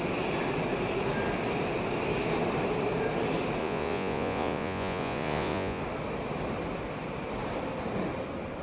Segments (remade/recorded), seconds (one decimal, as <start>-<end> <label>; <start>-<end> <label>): 0.0-3.6 recorded; 3.6-5.8 remade; 5.8-8.6 recorded